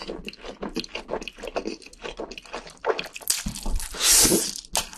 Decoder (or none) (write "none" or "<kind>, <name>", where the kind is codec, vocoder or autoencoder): none